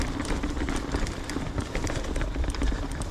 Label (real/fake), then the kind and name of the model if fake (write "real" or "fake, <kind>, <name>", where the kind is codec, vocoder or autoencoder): fake, vocoder, BigVGAN v2